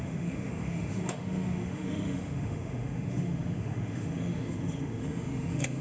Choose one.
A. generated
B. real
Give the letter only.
A